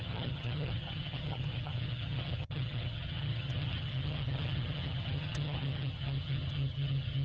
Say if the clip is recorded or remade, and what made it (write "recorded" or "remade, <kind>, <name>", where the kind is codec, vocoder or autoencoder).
remade, vocoder, HiFi-GAN